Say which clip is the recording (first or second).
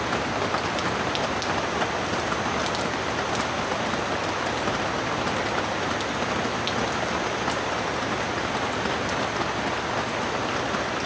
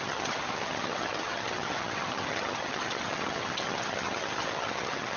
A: first